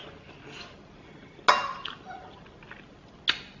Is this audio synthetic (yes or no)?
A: no